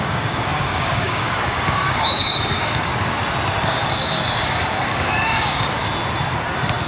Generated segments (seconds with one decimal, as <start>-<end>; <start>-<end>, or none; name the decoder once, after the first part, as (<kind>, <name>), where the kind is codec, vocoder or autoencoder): 0.0-2.9 (codec, DAC); 3.6-5.8